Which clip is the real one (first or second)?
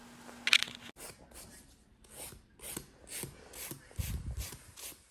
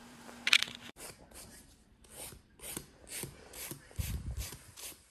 first